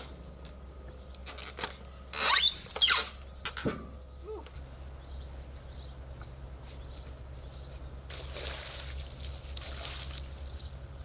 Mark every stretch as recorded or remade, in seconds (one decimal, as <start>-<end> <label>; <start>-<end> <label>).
0.0-11.0 recorded